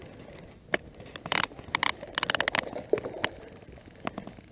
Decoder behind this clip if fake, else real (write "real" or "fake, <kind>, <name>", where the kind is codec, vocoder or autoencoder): real